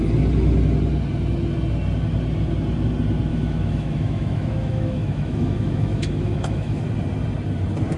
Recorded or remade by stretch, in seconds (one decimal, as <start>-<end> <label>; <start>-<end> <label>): 0.0-3.3 recorded; 3.3-6.8 remade; 6.8-8.0 recorded